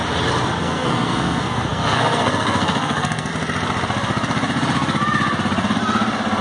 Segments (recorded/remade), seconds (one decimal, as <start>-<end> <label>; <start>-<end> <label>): 0.0-0.6 recorded; 0.6-3.3 remade; 3.3-6.4 recorded